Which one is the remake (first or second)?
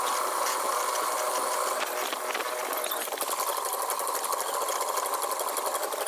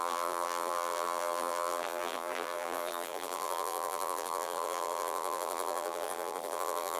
second